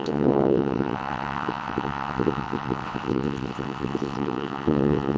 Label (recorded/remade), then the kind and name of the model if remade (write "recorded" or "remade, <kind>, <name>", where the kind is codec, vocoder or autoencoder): remade, vocoder, WaveNeXt